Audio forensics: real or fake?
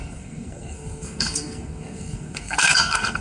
fake